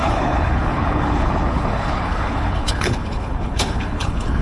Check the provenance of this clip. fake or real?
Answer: fake